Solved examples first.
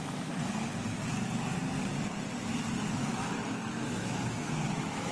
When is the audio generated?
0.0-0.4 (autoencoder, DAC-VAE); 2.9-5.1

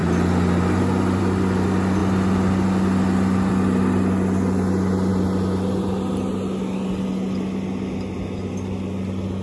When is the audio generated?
none

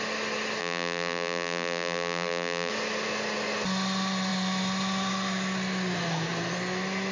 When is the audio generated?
0.6-2.7 (vocoder, BigVGAN v2)

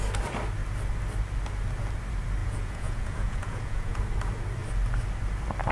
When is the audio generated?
2.4-4.0 (vocoder, Vocos)